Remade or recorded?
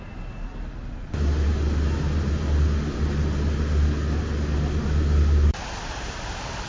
recorded